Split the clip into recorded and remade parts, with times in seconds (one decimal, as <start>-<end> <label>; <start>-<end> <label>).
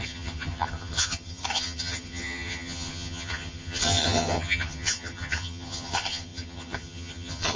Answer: 0.0-7.6 remade